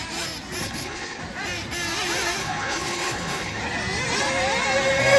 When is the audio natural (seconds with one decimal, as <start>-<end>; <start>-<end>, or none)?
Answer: 0.0-0.6; 1.2-2.4; 3.6-5.2